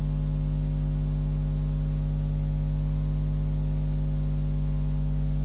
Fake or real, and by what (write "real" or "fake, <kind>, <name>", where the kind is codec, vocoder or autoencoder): real